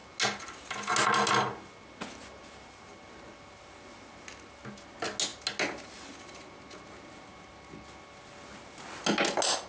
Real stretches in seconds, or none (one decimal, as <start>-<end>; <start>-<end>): 0.0-9.7